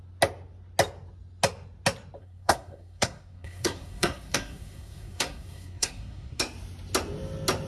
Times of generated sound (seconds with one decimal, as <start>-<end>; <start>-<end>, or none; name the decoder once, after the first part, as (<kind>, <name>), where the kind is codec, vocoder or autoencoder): 2.2-6.4 (codec, SNAC)